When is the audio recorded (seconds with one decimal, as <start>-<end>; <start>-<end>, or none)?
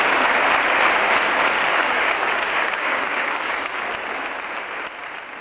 0.0-1.7; 3.8-5.4